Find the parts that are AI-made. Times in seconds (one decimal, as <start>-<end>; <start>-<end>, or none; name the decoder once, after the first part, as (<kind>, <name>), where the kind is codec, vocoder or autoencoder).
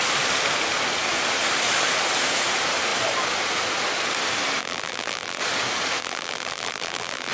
4.6-5.4 (vocoder, BigVGAN v2); 6.0-7.3